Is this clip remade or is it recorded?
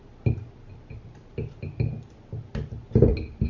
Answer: recorded